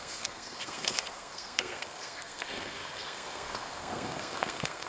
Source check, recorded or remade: remade